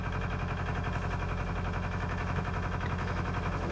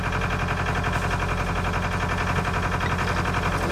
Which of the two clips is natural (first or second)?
second